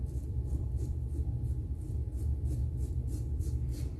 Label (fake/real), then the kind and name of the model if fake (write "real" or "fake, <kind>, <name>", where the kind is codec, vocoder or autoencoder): fake, vocoder, BigVGAN v2